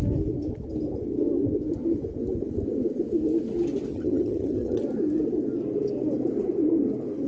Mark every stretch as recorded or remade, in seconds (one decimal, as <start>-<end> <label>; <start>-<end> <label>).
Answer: 0.0-3.9 recorded; 3.9-4.8 remade; 4.8-7.3 recorded